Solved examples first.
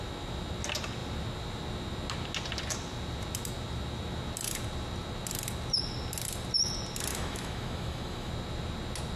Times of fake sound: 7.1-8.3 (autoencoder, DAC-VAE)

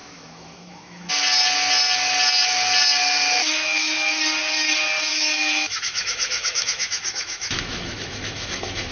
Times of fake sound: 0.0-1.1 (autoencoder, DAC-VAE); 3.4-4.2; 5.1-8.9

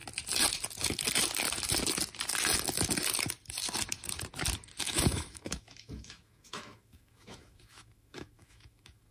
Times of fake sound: 4.8-9.1 (autoencoder, DAC-VAE)

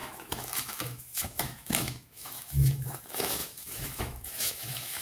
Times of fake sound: 0.0-5.0 (autoencoder, DAC-VAE)